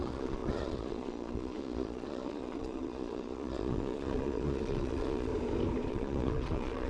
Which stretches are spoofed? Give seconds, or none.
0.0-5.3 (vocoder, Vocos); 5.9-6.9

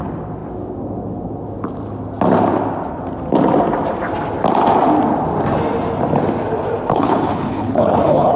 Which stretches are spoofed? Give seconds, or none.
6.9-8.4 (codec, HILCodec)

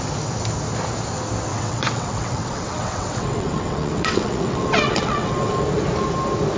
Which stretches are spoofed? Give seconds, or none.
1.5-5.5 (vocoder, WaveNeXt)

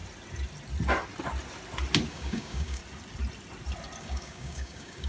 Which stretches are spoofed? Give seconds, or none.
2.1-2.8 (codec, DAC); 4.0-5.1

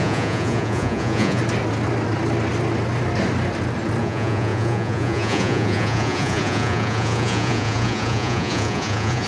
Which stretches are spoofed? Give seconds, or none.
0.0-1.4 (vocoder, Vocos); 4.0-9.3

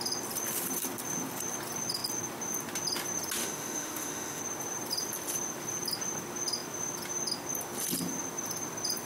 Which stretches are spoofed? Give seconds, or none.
3.4-4.4 (autoencoder, DAC-VAE)

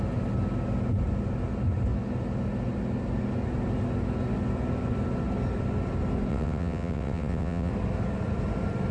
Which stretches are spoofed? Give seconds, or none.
6.3-7.7 (vocoder, WaveNeXt)